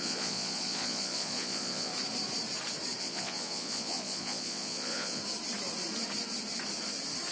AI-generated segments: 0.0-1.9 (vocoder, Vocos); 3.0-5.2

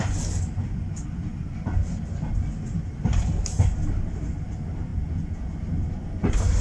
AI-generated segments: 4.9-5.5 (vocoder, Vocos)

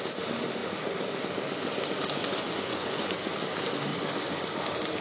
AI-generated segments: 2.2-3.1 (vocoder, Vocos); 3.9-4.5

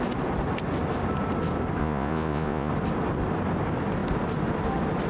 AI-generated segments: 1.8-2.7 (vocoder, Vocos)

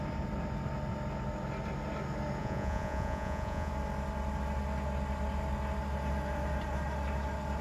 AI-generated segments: 2.4-3.7 (vocoder, Vocos)